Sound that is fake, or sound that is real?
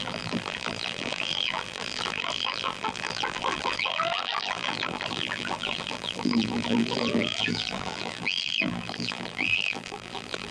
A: fake